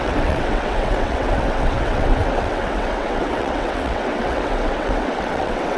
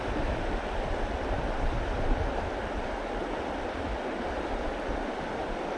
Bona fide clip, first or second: second